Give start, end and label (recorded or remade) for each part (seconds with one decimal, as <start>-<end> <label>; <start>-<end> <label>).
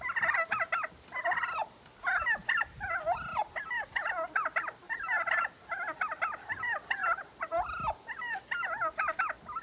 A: 0.0-2.4 recorded; 2.4-3.0 remade; 3.0-7.0 recorded; 7.0-7.5 remade; 7.5-9.6 recorded